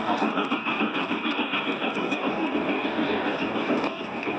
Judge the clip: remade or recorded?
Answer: remade